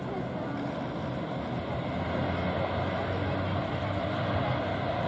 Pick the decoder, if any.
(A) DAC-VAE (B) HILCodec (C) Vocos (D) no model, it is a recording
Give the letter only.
D